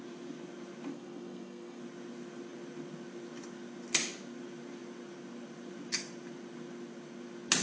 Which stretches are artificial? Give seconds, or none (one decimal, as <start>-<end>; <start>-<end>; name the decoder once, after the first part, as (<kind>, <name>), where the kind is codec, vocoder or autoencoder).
0.9-1.8 (codec, SNAC)